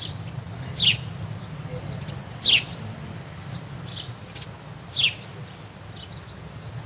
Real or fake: real